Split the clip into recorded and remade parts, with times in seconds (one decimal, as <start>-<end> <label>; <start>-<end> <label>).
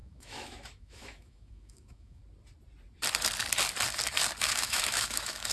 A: 0.0-2.2 remade; 2.2-4.4 recorded; 4.4-5.5 remade